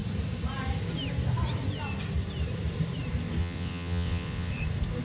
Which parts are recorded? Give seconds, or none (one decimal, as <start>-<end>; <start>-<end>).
0.0-3.4; 4.5-5.0